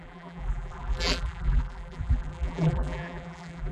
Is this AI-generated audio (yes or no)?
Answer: yes